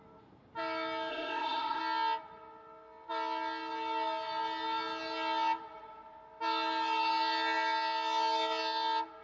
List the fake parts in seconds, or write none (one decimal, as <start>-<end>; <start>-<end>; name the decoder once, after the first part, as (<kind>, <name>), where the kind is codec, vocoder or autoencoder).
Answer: 1.1-1.8 (codec, ZipCodec)